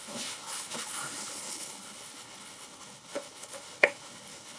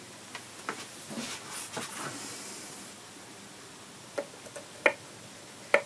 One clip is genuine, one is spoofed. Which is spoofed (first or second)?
first